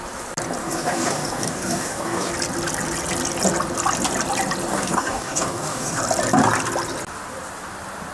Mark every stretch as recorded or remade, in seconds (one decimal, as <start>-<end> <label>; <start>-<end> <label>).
0.0-0.6 recorded; 0.6-2.3 remade; 2.3-4.7 recorded; 4.7-6.0 remade; 6.0-8.1 recorded